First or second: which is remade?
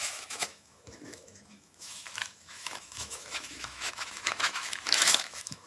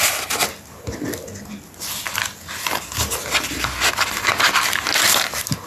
first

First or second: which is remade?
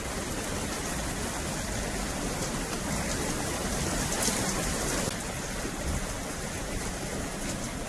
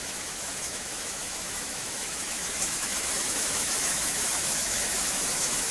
second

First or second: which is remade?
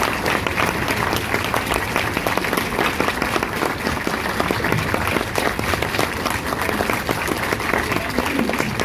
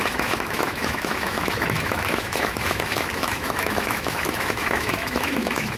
second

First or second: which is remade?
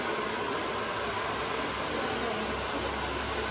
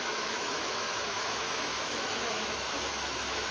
second